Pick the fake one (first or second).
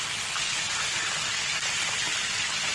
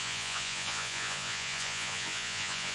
second